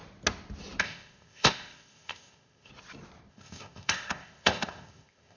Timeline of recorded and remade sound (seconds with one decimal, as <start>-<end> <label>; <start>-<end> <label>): 0.0-0.8 recorded; 0.8-2.7 remade; 2.7-3.3 recorded; 3.3-5.4 remade